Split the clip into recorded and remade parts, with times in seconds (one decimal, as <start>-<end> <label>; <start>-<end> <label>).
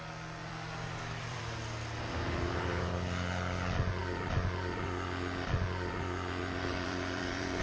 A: 0.0-0.4 recorded; 0.4-1.4 remade; 1.4-4.0 recorded; 4.0-7.6 remade